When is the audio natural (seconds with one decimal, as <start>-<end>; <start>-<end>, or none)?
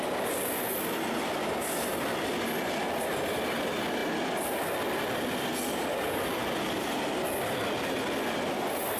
0.0-9.0